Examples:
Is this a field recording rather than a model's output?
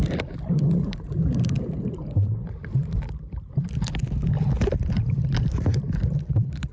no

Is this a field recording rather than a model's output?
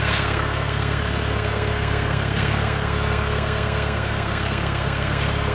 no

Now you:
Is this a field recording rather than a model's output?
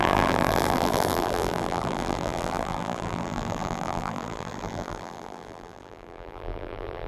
no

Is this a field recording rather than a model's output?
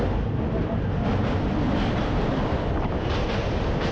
yes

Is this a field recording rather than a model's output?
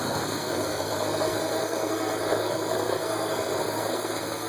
no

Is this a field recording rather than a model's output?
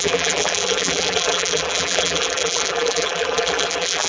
no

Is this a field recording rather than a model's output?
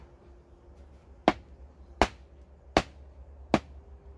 yes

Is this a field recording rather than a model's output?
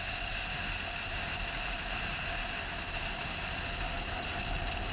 yes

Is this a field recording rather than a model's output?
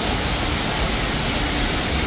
yes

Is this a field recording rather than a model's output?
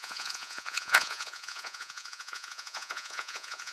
no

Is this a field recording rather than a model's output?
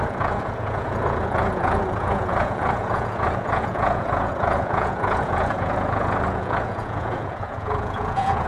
no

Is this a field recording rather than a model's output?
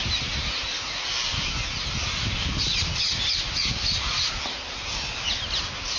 yes